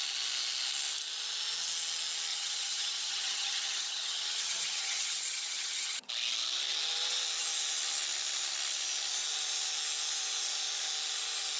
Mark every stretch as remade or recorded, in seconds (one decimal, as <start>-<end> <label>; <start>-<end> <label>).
0.0-2.3 recorded; 2.3-6.1 remade; 6.1-11.6 recorded